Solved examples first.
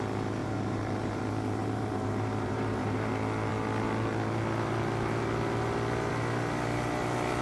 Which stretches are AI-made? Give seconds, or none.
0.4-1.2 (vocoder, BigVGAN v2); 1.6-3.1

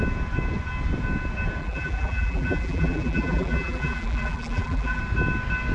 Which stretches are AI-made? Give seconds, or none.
1.6-5.0 (vocoder, BigVGAN v2)

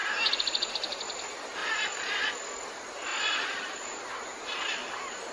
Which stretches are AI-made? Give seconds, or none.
0.0-0.7 (vocoder, BigVGAN v2); 1.6-2.2; 3.1-4.0

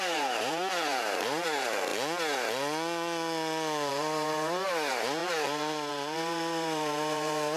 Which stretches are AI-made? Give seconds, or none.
0.0-1.9 (vocoder, BigVGAN v2); 3.9-7.6

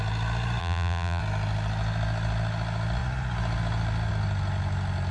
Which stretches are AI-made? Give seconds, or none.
0.6-1.2 (vocoder, BigVGAN v2)

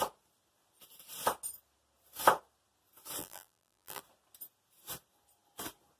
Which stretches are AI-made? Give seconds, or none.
3.2-4.0 (vocoder, BigVGAN v2)

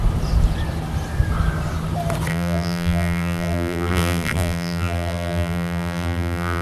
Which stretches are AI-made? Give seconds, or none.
2.3-6.6 (vocoder, BigVGAN v2)